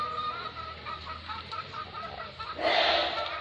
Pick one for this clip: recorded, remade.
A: recorded